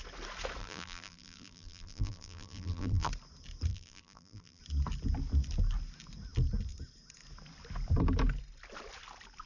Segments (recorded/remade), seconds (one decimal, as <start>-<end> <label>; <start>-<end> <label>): 0.0-0.6 recorded; 0.6-3.1 remade; 3.1-3.7 recorded; 3.7-4.6 remade; 4.6-9.5 recorded